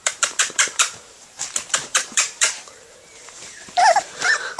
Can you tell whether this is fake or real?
fake